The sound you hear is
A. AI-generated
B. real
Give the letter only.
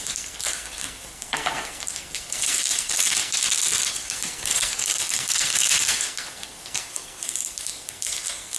A